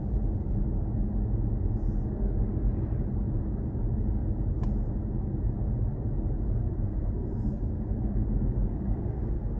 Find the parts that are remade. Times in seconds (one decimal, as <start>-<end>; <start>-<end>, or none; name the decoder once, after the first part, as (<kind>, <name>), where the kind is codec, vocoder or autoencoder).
6.6-9.6 (codec, SNAC)